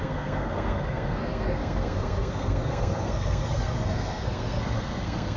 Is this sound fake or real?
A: fake